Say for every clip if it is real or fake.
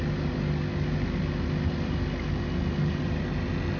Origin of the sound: real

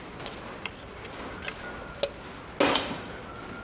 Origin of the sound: real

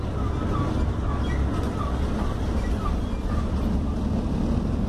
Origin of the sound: real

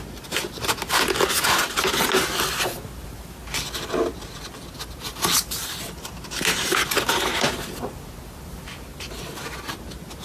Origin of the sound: real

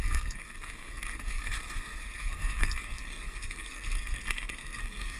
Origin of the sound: fake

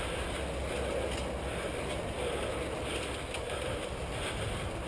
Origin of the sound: real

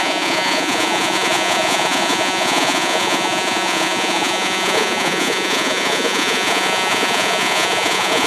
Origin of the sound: fake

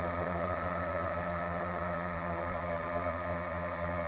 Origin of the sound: fake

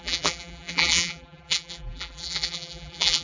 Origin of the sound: fake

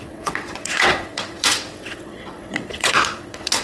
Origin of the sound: fake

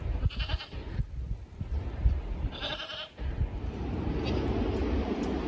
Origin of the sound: real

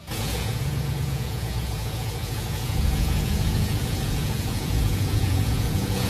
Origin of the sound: fake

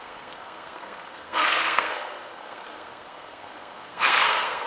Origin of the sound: fake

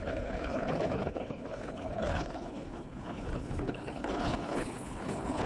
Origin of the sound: fake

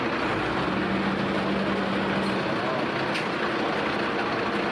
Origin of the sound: real